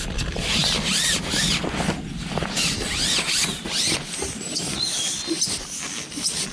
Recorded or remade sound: recorded